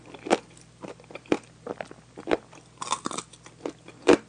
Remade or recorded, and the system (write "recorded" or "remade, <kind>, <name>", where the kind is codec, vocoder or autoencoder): recorded